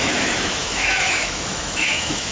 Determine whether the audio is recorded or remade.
remade